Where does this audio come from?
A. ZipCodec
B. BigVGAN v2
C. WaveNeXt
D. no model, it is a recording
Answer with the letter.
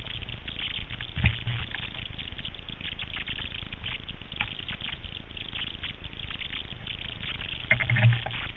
D